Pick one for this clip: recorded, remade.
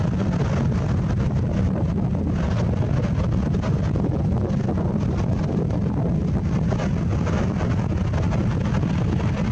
recorded